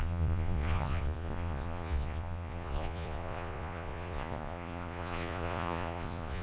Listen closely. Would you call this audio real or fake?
fake